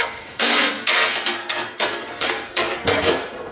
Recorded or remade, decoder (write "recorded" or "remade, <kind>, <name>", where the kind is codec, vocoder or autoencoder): remade, codec, SNAC